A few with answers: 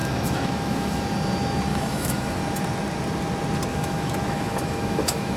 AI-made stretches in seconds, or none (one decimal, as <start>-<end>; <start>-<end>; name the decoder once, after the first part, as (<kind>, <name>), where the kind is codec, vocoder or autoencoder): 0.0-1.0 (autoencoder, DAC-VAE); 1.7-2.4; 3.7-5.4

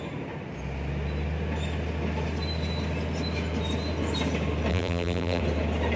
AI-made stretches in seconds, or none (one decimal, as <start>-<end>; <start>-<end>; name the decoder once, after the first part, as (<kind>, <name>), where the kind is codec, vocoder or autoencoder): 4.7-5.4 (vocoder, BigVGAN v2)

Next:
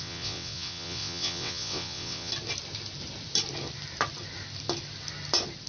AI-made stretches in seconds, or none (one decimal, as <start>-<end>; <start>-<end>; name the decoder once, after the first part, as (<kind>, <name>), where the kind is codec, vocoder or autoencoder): 0.0-2.3 (vocoder, WaveNeXt)

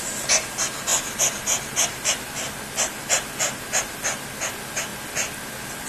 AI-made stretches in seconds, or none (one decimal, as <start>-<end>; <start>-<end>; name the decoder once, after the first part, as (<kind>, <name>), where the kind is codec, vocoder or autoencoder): none

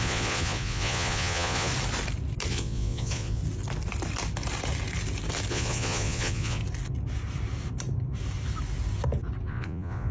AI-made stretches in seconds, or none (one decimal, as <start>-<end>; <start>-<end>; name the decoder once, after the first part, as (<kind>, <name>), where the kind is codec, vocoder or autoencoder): 0.0-1.7 (vocoder, Vocos); 2.5-3.4; 5.5-6.6; 9.5-10.1

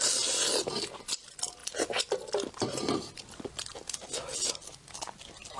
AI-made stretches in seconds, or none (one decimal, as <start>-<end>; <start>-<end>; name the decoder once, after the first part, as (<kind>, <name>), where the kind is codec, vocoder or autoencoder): none

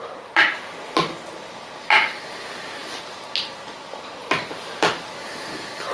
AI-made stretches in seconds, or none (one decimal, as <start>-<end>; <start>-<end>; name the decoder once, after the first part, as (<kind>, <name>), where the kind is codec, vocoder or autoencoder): none